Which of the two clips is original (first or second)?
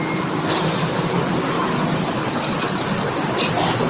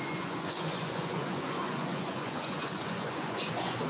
first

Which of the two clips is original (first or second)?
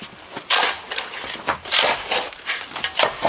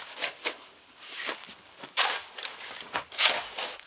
first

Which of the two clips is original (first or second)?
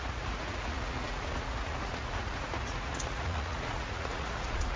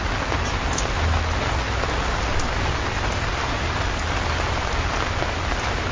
second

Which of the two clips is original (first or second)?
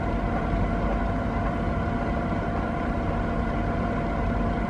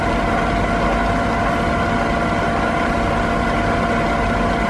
second